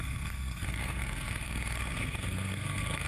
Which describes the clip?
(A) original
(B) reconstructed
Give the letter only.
B